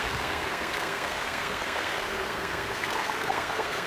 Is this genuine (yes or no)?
no